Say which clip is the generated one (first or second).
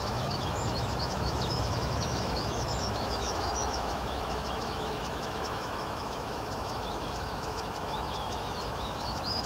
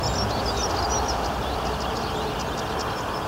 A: first